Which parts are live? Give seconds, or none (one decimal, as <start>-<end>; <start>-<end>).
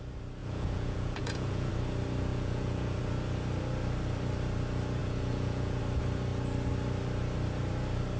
0.0-0.4; 1.7-2.3; 3.0-5.0; 5.8-8.2